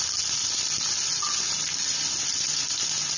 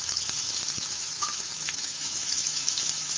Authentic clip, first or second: first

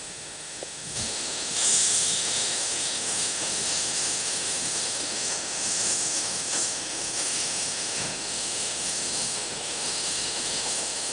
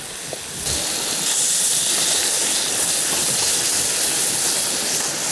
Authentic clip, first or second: second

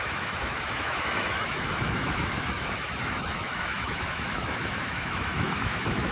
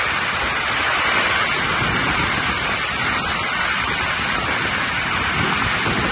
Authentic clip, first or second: second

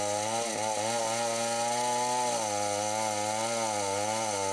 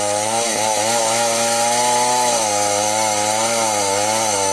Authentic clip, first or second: first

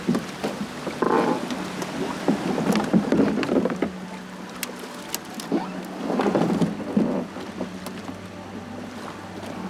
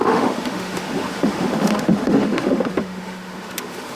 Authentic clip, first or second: first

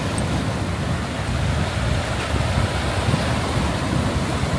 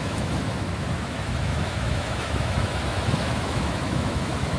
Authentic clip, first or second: first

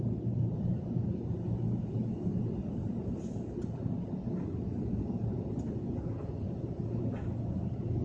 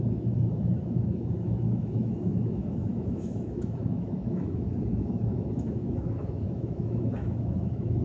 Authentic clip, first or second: first